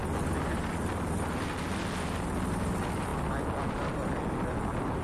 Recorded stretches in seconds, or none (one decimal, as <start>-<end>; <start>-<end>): 0.0-5.0